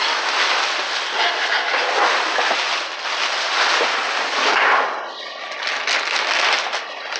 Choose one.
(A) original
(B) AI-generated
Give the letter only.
A